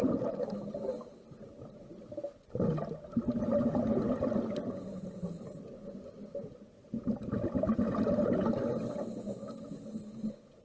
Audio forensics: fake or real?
real